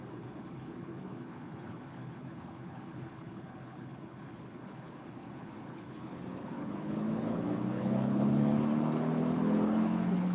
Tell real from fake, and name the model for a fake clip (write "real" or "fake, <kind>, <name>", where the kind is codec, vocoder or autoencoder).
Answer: fake, codec, HILCodec